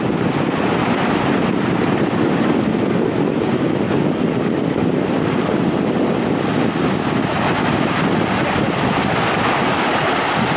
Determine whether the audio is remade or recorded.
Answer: recorded